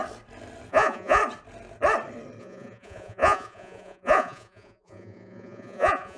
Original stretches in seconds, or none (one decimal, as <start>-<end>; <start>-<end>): 0.0-0.7; 1.2-2.4